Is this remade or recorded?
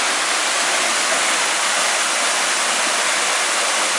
recorded